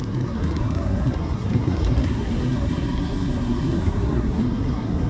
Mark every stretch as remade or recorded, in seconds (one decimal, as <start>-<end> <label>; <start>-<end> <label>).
0.0-5.1 remade